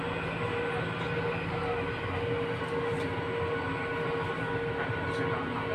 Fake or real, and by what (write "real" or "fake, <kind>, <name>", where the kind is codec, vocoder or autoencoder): real